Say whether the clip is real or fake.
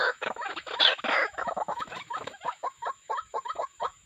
fake